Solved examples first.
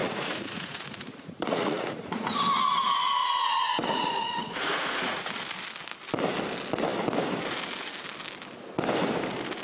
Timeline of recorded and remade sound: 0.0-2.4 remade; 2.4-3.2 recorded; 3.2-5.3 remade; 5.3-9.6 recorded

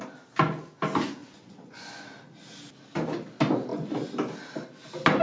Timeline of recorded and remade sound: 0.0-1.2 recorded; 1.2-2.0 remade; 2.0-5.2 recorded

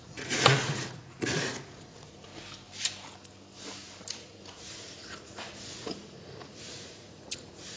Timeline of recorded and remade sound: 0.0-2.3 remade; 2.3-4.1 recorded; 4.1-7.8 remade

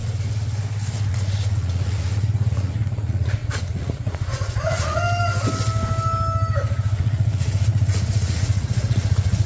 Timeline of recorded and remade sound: 0.0-1.1 recorded; 1.1-5.0 remade; 5.0-7.0 recorded; 7.0-9.5 remade